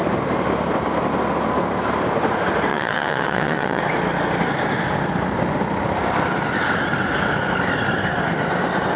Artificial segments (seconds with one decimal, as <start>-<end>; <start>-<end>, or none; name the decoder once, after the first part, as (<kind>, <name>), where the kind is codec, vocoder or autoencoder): 2.7-3.8 (vocoder, WaveNeXt)